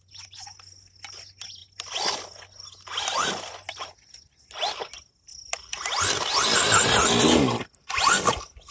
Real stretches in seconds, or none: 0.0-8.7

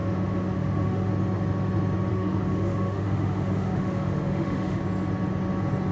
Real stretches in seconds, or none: 1.1-2.1; 4.8-5.9

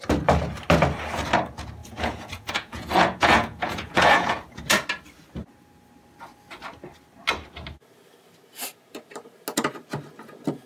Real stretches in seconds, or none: 0.0-1.8; 4.6-10.7

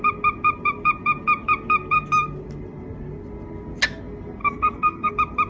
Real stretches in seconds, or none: 0.0-4.4; 5.1-5.5